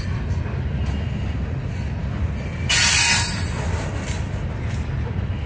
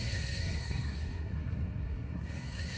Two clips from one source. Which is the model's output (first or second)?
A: second